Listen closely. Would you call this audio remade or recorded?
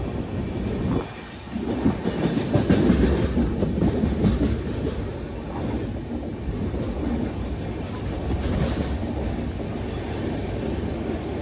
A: recorded